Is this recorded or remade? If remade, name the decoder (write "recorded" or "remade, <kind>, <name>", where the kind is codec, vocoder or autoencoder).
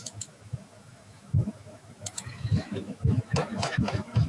remade, autoencoder, DAC-VAE